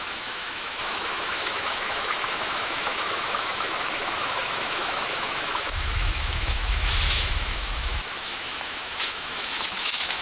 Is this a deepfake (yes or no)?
yes